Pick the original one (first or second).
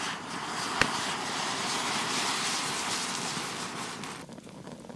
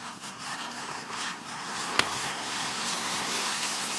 first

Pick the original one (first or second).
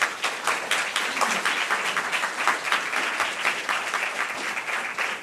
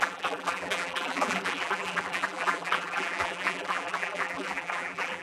first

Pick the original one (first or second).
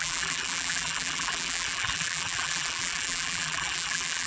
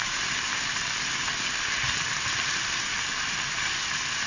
second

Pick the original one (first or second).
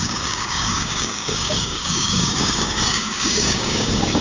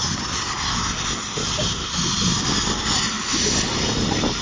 second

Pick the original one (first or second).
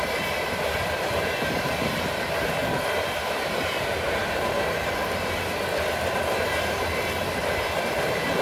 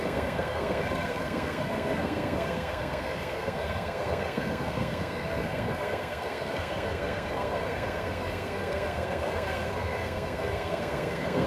first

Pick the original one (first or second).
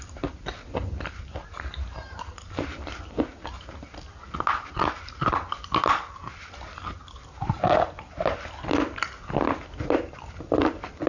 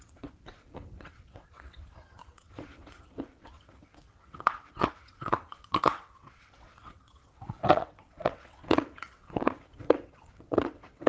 first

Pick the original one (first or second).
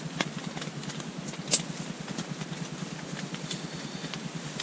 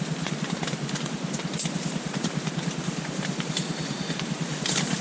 first